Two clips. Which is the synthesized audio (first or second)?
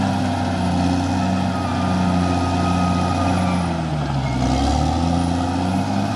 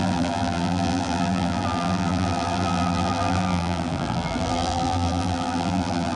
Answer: second